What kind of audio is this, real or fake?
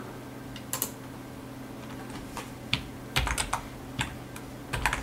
real